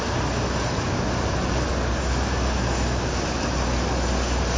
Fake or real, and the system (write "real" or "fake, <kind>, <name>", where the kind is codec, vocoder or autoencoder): real